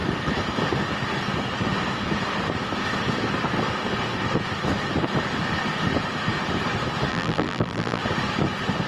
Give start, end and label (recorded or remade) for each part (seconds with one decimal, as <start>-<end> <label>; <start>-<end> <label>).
0.0-7.1 recorded; 7.1-8.0 remade; 8.0-8.9 recorded